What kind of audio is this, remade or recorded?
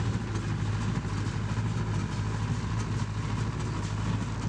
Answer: recorded